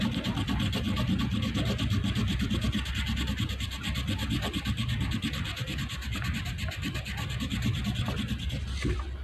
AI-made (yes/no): no